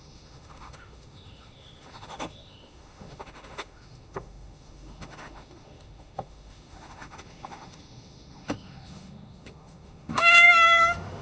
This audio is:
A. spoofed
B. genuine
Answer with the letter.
A